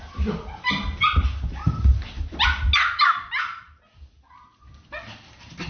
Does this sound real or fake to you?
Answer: real